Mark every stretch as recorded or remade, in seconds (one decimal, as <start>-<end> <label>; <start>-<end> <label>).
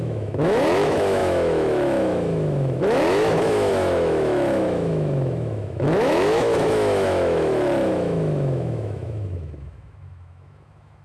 0.0-11.0 remade